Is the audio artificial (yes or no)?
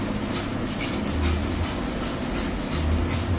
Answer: no